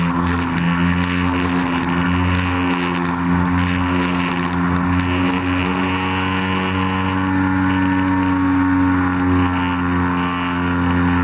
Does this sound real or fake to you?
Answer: real